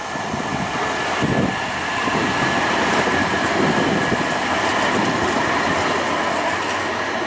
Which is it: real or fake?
real